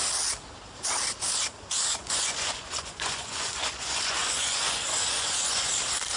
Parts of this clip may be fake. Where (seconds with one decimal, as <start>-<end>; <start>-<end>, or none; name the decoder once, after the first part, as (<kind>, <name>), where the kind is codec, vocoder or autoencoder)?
2.0-5.7 (vocoder, Vocos)